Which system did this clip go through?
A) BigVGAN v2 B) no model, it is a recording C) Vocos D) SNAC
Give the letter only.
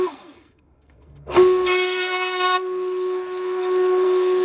D